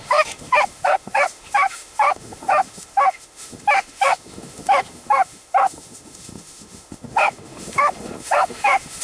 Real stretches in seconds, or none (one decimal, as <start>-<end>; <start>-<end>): none